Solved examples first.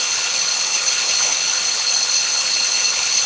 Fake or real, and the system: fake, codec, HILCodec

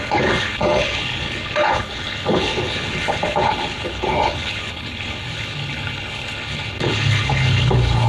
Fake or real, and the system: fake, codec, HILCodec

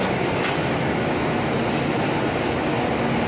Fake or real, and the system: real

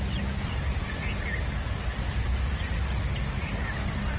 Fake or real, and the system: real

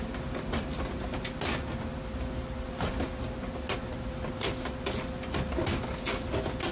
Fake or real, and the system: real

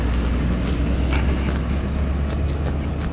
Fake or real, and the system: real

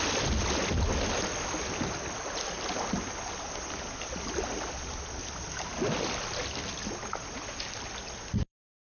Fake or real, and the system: real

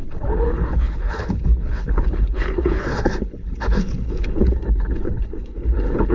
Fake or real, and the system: fake, codec, HILCodec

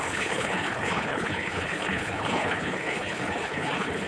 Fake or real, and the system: fake, codec, HILCodec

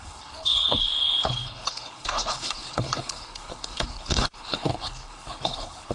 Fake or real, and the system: fake, codec, HILCodec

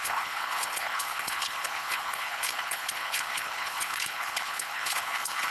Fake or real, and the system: fake, codec, HILCodec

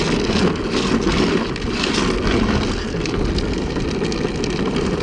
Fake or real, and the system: real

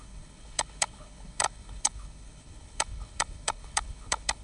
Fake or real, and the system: fake, codec, HILCodec